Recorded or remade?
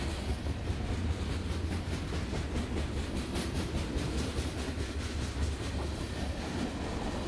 recorded